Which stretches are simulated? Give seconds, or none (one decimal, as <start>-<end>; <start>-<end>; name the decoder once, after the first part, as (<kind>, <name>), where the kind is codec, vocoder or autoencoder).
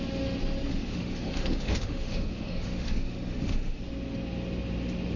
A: 0.7-3.8 (autoencoder, DAC-VAE)